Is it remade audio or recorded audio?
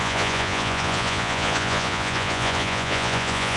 remade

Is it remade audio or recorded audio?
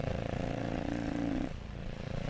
remade